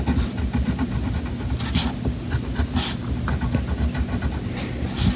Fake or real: real